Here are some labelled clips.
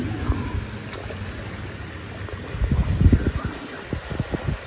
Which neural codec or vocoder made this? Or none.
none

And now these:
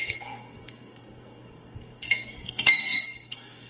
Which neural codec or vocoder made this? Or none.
codec, SNAC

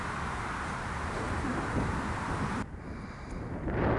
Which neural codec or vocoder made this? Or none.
none